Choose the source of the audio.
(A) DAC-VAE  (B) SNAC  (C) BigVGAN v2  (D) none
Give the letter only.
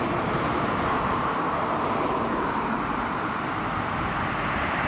C